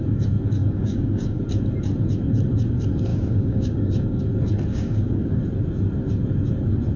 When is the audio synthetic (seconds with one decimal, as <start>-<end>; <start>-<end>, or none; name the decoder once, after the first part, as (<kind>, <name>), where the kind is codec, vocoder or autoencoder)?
0.6-1.4 (codec, DAC); 3.1-4.2; 4.7-5.4